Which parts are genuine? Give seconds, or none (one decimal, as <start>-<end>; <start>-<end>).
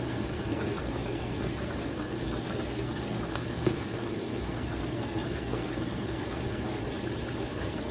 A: 6.8-7.5